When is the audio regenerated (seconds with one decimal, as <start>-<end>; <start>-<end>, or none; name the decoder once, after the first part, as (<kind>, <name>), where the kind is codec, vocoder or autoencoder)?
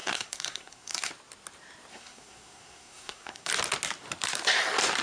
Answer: 0.0-1.1 (codec, SNAC); 1.9-3.5